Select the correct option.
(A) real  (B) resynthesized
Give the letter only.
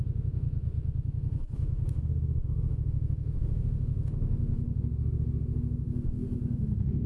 B